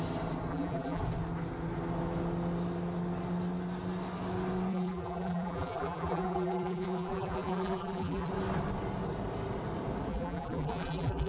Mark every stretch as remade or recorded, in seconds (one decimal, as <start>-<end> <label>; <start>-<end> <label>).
0.0-0.5 recorded; 0.5-1.0 remade; 1.0-4.7 recorded; 4.7-8.3 remade; 8.3-10.1 recorded; 10.1-11.3 remade